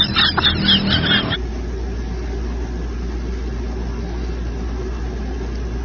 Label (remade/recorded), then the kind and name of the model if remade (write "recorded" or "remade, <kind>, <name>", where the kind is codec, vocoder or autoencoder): recorded